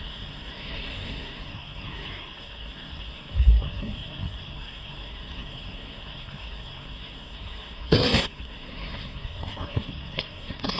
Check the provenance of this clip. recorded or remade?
remade